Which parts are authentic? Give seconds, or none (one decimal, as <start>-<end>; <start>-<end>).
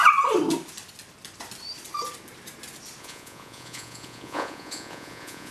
0.0-3.0